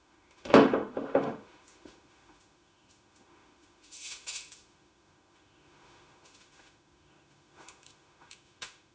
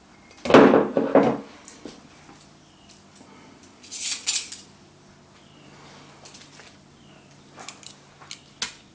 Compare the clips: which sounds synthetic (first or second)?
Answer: first